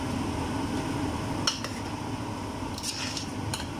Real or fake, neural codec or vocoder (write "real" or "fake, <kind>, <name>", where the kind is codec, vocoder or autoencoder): real